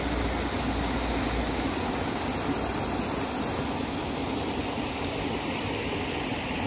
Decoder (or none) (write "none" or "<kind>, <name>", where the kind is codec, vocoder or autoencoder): none